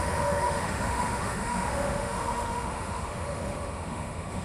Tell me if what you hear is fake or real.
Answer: fake